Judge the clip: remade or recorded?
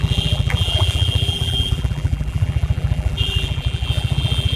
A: remade